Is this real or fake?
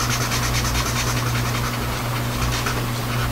real